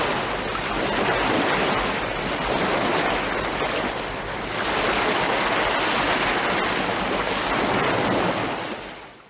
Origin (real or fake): real